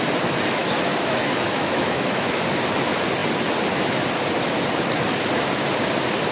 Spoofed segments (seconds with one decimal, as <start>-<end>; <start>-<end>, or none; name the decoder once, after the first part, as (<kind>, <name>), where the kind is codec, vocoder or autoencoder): 0.6-2.4 (autoencoder, DAC-VAE)